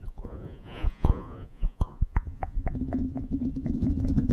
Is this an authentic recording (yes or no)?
no